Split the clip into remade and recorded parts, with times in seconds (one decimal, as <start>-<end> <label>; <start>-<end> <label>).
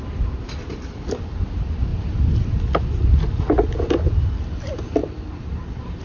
0.0-1.9 remade; 1.9-4.2 recorded; 4.2-5.0 remade; 5.0-6.0 recorded